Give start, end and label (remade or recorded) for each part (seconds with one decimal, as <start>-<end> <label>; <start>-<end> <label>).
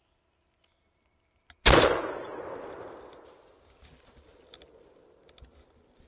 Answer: 0.0-6.1 recorded